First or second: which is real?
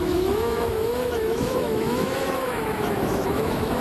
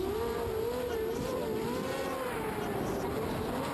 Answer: second